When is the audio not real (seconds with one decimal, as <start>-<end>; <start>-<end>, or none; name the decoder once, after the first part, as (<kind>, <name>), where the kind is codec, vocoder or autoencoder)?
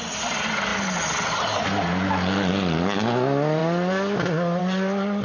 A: none